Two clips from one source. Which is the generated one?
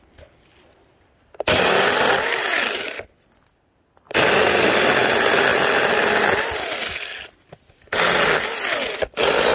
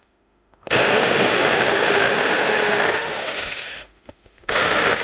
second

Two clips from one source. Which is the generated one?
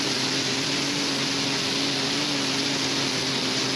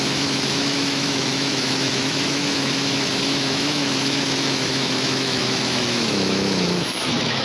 second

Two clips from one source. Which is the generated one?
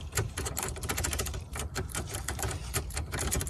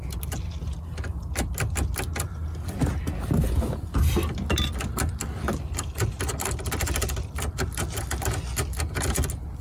first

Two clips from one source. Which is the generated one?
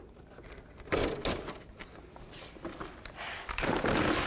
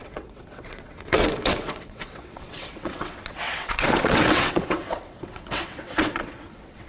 second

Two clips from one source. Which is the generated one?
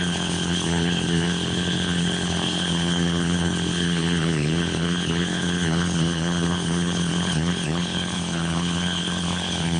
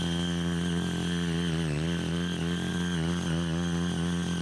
first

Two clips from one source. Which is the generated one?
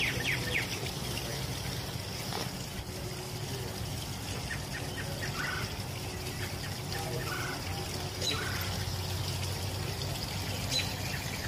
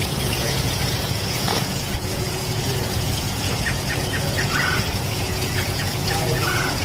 second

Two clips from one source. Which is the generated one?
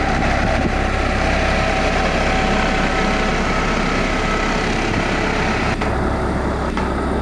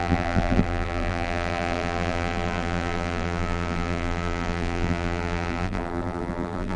second